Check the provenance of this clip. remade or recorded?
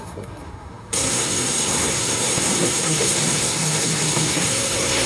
remade